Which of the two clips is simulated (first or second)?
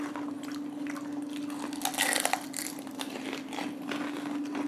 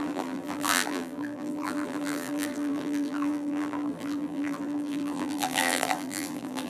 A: second